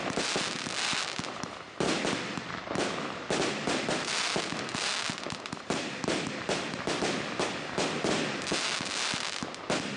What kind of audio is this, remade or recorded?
recorded